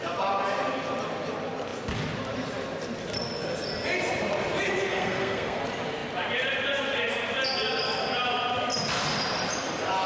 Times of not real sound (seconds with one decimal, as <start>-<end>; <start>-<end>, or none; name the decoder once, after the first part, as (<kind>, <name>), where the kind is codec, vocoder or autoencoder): 4.9-5.6 (codec, SNAC)